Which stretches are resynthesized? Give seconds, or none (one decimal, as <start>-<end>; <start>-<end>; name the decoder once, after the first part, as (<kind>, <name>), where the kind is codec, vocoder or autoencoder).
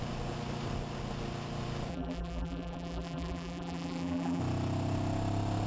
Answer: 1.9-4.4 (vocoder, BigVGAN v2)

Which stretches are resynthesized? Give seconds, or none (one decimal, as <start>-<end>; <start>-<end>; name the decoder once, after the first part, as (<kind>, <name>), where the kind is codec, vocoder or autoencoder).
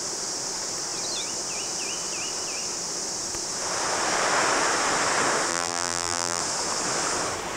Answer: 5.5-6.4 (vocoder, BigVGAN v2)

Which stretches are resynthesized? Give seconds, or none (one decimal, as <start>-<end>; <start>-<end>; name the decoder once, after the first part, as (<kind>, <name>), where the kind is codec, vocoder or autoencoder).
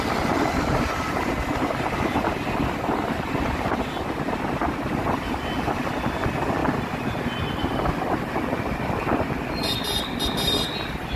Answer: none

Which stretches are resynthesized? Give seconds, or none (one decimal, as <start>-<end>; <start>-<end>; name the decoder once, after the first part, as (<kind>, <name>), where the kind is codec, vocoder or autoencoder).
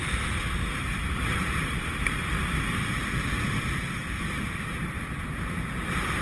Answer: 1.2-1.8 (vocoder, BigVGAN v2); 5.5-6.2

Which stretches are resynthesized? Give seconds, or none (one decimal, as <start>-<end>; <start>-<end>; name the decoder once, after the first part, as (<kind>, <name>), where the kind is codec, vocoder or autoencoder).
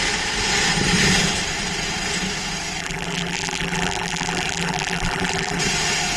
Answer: 2.8-5.6 (vocoder, BigVGAN v2)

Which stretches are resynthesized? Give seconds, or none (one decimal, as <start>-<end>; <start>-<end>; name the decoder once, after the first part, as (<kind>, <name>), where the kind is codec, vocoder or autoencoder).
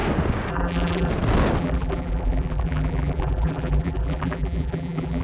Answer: 0.5-1.1 (vocoder, BigVGAN v2); 1.6-5.2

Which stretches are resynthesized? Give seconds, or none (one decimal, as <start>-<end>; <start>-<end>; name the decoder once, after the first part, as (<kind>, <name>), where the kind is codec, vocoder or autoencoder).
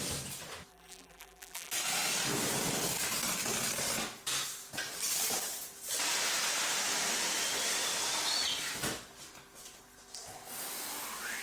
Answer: 0.7-1.7 (vocoder, BigVGAN v2)